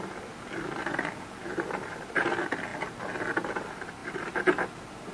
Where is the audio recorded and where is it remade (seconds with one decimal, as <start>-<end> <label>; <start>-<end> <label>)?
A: 0.0-2.7 recorded; 2.7-3.4 remade; 3.4-5.1 recorded